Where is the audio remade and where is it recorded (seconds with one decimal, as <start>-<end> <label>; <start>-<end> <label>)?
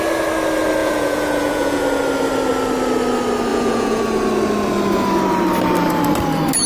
0.0-0.8 recorded; 0.8-1.8 remade; 1.8-3.5 recorded; 3.5-4.0 remade; 4.0-6.7 recorded